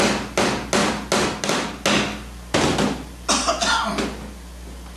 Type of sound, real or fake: real